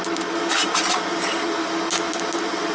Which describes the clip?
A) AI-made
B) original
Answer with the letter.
B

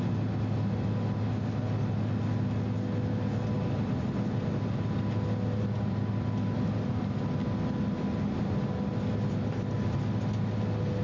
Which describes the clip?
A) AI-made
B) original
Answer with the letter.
B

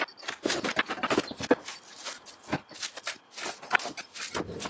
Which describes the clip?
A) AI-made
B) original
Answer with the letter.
B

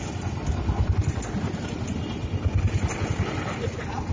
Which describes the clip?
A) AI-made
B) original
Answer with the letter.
B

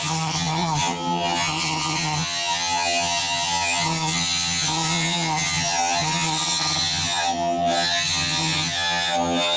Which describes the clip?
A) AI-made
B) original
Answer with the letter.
A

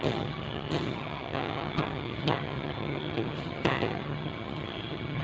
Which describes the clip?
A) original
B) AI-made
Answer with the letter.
B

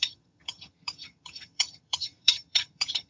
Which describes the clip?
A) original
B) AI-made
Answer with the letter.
B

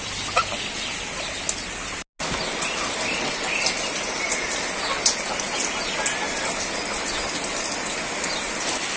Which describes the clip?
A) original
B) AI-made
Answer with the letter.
A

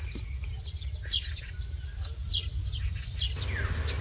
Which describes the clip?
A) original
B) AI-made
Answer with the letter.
A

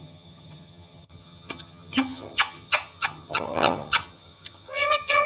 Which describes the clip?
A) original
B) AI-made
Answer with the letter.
B